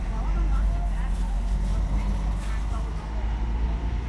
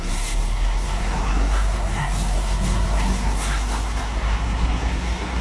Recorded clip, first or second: first